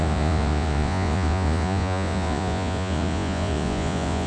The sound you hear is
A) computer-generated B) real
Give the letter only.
A